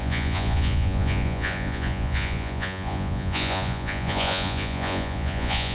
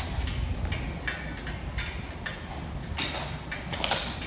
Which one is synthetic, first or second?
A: first